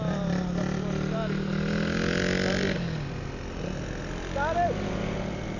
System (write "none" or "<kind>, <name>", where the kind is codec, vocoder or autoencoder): none